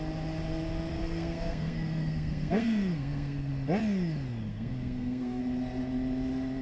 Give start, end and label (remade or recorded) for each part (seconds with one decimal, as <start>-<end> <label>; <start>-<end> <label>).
0.0-0.9 recorded; 0.9-3.5 remade; 3.5-4.5 recorded; 4.5-5.4 remade; 5.4-6.6 recorded